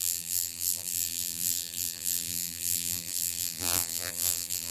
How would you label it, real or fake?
fake